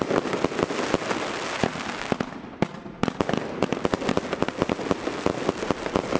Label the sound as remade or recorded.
recorded